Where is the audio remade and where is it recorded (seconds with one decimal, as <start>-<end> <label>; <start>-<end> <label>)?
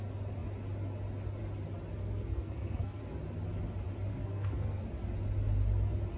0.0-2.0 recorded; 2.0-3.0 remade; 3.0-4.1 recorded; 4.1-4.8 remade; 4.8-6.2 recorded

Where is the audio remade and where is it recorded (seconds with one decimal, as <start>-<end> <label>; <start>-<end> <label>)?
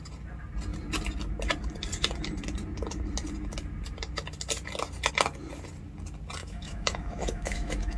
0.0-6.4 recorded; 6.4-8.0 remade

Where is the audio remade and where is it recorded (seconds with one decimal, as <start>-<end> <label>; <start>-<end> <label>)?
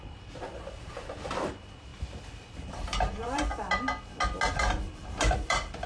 0.0-1.9 remade; 1.9-2.6 recorded; 2.6-3.5 remade; 3.5-4.5 recorded; 4.5-5.9 remade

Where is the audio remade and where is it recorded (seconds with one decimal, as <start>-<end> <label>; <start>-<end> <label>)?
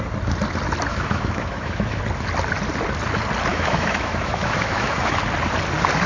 0.0-0.9 recorded; 0.9-2.0 remade; 2.0-3.5 recorded; 3.5-5.2 remade; 5.2-6.1 recorded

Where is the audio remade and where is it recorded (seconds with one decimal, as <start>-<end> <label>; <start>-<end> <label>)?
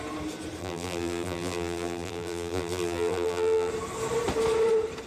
0.0-0.6 recorded; 0.6-3.7 remade; 3.7-5.1 recorded